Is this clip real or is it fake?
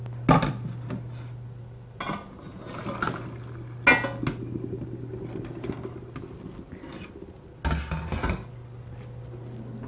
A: real